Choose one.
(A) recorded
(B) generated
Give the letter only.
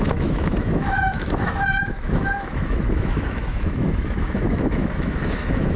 B